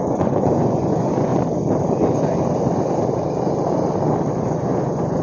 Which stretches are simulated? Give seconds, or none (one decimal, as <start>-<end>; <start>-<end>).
0.0-1.3; 4.4-5.2